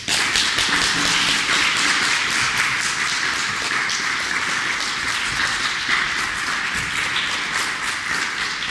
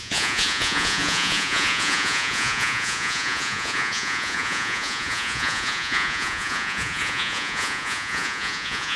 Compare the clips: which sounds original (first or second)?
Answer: first